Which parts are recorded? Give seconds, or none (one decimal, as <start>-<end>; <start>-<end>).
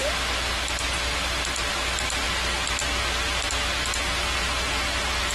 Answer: 0.0-1.7; 2.8-5.3